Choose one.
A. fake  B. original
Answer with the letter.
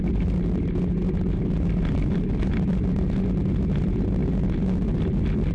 B